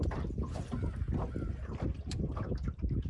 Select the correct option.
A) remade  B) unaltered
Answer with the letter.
B